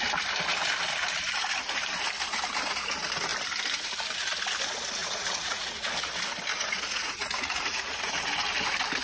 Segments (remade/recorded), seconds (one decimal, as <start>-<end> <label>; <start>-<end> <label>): 0.0-5.0 recorded; 5.0-5.9 remade; 5.9-6.5 recorded; 6.5-8.3 remade; 8.3-9.0 recorded